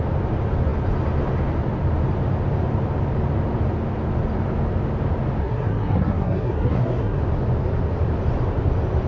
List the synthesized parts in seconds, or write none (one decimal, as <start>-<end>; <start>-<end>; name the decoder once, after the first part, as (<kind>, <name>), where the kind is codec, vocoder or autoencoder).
5.4-7.2 (codec, SNAC)